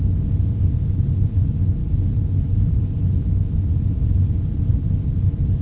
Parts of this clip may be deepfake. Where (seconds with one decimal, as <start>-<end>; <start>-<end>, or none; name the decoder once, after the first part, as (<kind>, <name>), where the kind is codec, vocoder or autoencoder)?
none